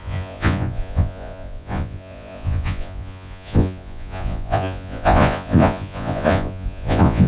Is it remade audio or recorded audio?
remade